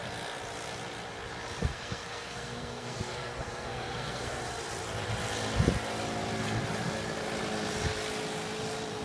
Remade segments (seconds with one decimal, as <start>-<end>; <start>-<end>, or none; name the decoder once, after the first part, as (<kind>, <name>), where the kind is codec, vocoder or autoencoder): 1.6-4.4 (codec, SNAC)